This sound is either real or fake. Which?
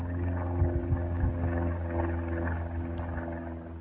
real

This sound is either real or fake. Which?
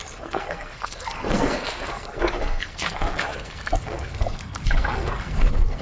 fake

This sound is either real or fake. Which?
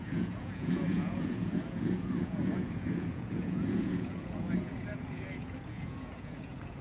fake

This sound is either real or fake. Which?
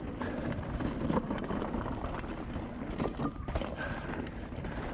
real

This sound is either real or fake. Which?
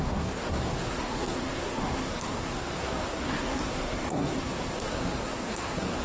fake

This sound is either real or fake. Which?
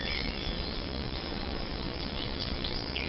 fake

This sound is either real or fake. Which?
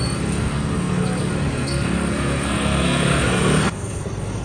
fake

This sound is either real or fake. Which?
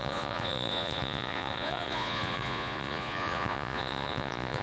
fake